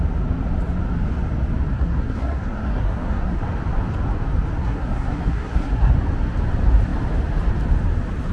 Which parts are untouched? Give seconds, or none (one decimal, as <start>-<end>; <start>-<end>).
0.0-1.7; 3.4-4.6; 5.9-8.3